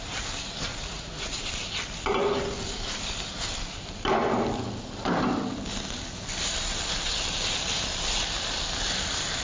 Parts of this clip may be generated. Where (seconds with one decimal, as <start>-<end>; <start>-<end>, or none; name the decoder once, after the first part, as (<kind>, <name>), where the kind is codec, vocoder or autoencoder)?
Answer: 0.7-1.5 (vocoder, Vocos)